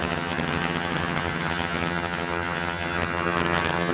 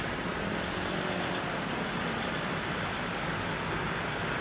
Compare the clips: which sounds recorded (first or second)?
second